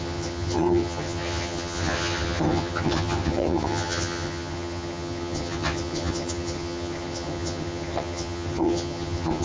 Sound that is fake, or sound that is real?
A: fake